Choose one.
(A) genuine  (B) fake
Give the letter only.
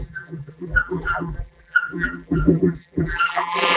B